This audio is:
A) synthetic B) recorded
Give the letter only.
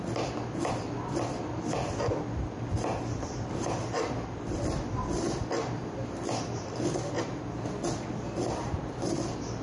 B